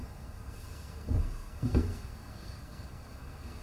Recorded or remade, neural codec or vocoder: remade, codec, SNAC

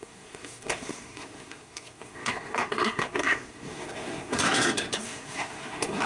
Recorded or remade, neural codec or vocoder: remade, codec, SNAC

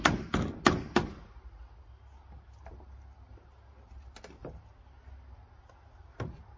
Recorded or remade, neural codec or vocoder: recorded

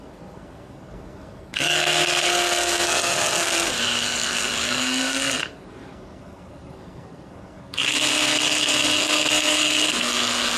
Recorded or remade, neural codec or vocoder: remade, codec, SNAC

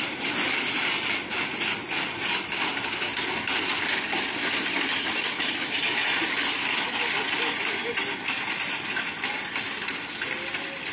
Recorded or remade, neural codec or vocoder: recorded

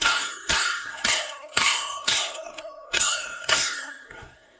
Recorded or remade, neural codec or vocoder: remade, codec, SNAC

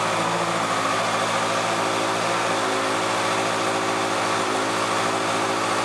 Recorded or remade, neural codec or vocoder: recorded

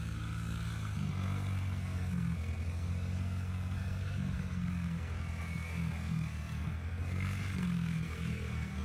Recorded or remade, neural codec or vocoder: remade, codec, SNAC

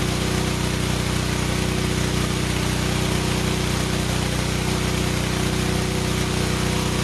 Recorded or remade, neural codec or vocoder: recorded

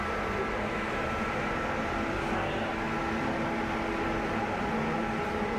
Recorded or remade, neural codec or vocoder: recorded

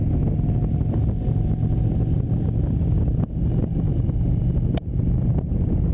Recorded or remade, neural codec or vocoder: recorded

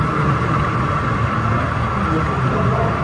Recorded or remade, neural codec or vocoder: recorded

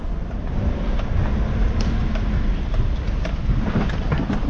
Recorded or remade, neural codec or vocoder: recorded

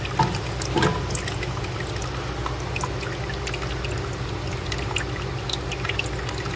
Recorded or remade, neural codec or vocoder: recorded